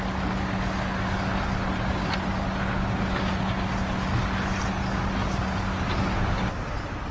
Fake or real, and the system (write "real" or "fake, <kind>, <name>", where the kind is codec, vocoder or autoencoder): real